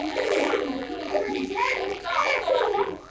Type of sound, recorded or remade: remade